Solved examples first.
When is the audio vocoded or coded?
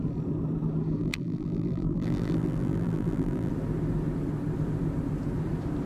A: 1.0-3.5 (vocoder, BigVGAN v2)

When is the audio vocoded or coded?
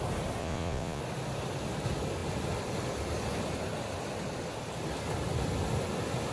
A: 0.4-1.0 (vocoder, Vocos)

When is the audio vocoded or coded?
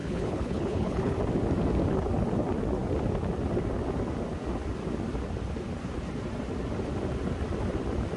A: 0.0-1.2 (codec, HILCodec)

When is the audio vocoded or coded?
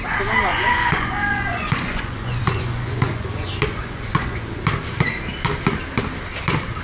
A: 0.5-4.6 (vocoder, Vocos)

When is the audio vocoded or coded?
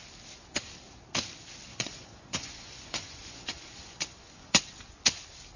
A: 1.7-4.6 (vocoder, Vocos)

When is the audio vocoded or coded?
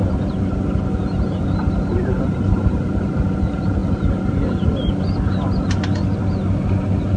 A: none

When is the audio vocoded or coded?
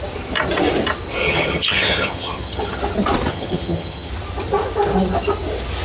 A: 1.2-2.8 (vocoder, HiFi-GAN); 3.3-4.1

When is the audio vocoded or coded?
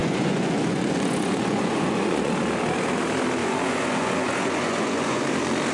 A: 0.0-2.3 (vocoder, Vocos); 3.4-5.2